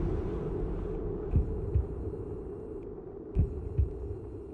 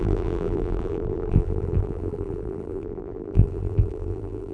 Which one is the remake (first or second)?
second